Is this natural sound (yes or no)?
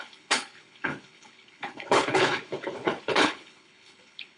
no